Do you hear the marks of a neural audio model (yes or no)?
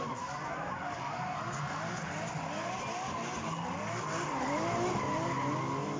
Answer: no